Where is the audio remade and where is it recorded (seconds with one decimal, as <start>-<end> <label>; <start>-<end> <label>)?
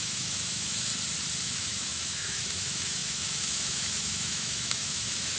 0.0-0.9 remade; 0.9-1.4 recorded; 1.4-5.4 remade